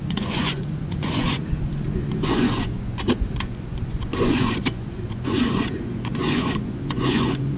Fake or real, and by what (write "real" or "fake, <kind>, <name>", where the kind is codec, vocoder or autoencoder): fake, vocoder, Vocos